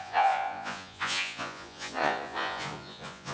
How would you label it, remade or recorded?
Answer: remade